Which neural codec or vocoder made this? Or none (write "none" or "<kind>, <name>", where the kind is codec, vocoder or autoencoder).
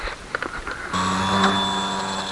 none